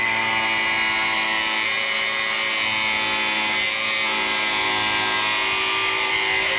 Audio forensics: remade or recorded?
recorded